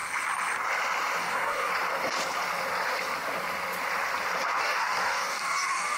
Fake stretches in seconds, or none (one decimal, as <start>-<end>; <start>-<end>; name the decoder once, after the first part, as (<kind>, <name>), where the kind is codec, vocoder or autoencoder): 1.2-1.7 (codec, DAC); 4.6-6.0